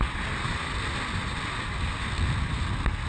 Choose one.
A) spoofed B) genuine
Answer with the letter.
B